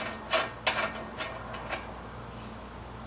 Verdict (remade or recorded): recorded